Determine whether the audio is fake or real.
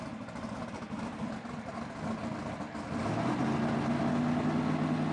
real